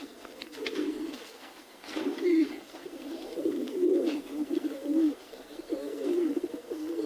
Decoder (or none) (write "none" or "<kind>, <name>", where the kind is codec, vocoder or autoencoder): codec, SNAC